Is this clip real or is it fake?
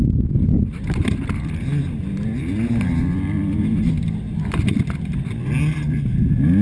real